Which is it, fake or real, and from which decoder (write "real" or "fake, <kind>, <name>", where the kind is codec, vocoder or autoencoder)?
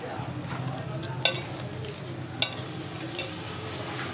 real